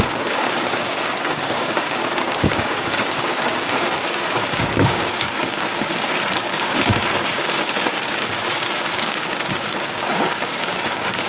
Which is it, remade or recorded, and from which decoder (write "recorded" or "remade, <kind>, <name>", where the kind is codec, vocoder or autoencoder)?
remade, codec, DAC